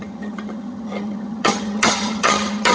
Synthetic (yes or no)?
yes